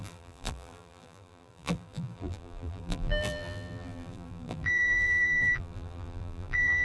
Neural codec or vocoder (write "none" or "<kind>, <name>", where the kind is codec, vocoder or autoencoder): vocoder, BigVGAN v2